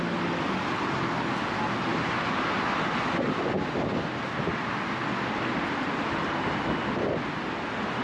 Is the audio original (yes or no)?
yes